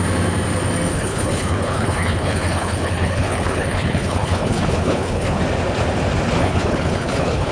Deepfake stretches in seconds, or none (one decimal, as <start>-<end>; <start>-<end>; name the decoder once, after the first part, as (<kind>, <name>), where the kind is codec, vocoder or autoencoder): 0.9-5.4 (codec, HILCodec); 6.4-7.5